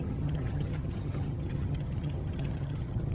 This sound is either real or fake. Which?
fake